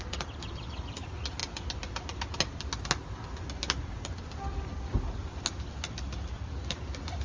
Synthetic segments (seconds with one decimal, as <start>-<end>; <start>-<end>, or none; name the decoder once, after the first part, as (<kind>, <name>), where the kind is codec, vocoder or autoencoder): none